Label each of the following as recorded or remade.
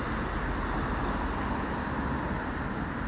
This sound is recorded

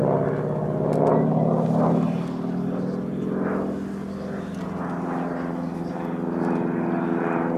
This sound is recorded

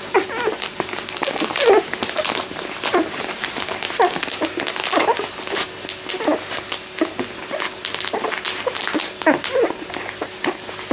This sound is recorded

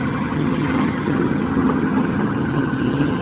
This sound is remade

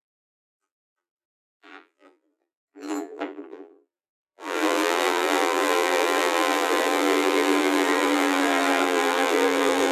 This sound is remade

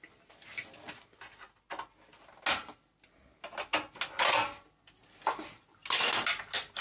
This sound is recorded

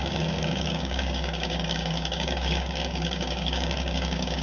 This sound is remade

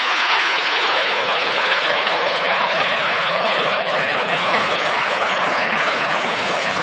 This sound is remade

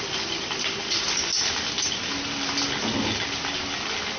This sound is recorded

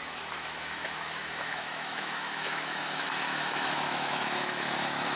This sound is remade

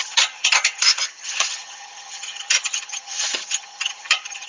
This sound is remade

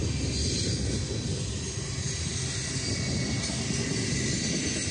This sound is recorded